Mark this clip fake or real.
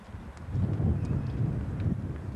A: real